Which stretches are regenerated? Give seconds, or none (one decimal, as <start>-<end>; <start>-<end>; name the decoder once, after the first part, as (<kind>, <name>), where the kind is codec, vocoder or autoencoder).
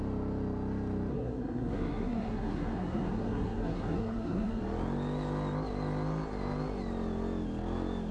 1.1-4.6 (codec, SNAC)